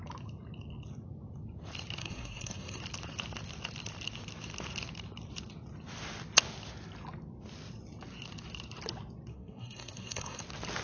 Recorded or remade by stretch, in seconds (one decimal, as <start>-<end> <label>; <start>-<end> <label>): 0.0-2.0 recorded; 2.0-2.8 remade; 2.8-9.3 recorded; 9.3-10.4 remade; 10.4-10.8 recorded